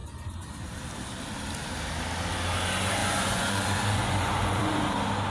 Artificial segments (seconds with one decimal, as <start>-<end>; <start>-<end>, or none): 3.0-4.7